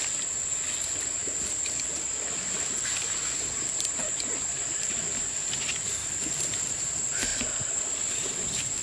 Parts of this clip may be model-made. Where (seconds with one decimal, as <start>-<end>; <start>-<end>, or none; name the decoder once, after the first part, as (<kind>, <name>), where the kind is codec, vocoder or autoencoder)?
1.2-5.3 (vocoder, BigVGAN v2); 6.0-6.7; 7.3-8.8